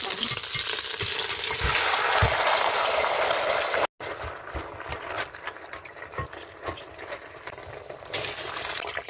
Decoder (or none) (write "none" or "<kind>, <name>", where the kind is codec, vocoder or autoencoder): none